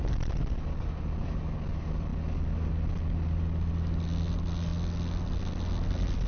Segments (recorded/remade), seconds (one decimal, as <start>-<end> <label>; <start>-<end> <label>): 0.0-6.3 recorded